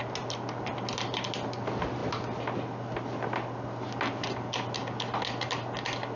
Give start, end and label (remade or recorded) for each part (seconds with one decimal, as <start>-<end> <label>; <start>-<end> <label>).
0.0-6.2 recorded